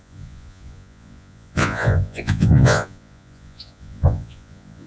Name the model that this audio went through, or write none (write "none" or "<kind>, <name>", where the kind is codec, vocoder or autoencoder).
vocoder, Vocos